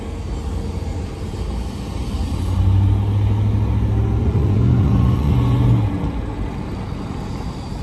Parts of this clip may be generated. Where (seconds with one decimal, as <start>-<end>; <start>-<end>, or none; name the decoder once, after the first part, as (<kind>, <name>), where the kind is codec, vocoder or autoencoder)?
4.2-5.3 (vocoder, Vocos)

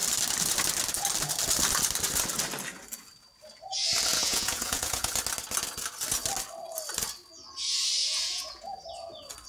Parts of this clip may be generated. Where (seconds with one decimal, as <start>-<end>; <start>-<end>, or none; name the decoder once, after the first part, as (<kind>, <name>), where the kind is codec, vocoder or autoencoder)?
4.1-5.1 (vocoder, Vocos); 8.0-8.8